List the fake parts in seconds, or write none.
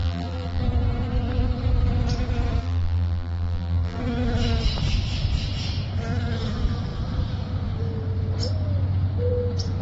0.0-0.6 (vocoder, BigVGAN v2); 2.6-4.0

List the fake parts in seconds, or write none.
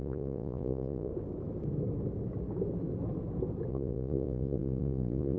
0.0-1.1 (vocoder, Vocos); 3.7-5.4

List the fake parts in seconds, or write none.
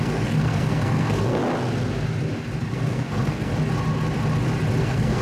0.0-1.4 (codec, SNAC); 2.6-3.5; 4.8-5.2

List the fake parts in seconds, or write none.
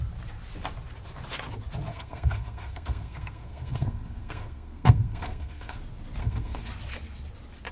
1.9-5.8 (codec, SNAC); 6.2-6.7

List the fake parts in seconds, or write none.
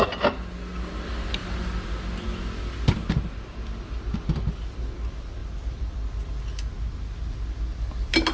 5.4-6.4 (vocoder, BigVGAN v2)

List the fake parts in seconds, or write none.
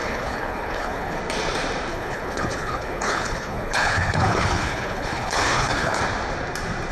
0.0-1.2 (codec, HILCodec); 1.9-6.0